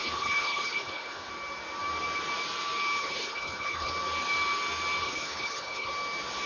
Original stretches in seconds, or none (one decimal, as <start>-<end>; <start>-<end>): 1.3-3.0; 3.9-5.0; 5.9-6.5